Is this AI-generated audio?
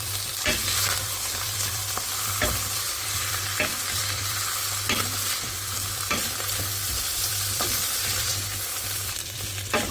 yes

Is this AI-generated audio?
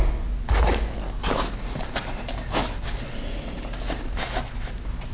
no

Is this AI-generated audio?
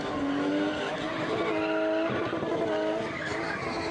no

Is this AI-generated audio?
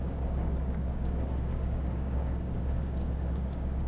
yes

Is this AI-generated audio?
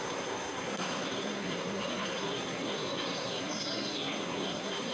yes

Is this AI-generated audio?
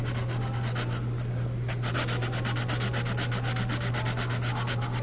no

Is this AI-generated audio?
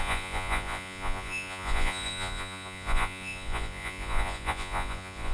yes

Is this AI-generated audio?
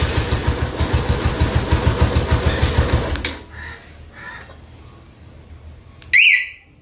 no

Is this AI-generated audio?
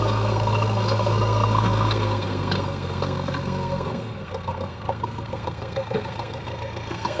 yes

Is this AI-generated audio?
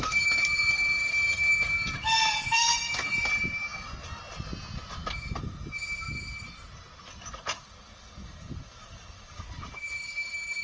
no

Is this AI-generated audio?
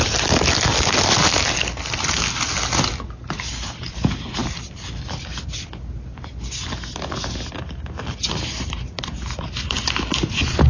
no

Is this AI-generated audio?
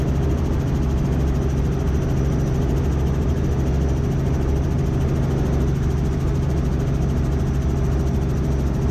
no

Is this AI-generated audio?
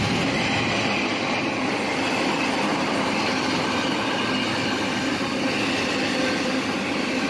no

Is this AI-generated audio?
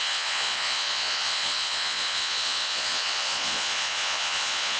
yes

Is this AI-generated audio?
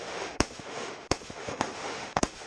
yes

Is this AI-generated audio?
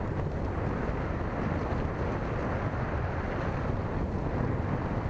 no